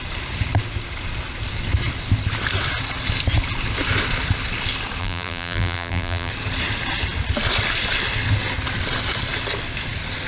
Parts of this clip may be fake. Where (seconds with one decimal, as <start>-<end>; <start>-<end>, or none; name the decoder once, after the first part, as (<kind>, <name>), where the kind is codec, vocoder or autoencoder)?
5.0-6.3 (vocoder, BigVGAN v2)